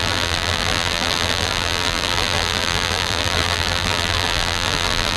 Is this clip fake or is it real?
fake